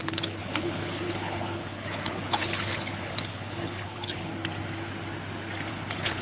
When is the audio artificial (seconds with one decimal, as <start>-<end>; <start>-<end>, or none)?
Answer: 0.0-4.3; 5.7-6.2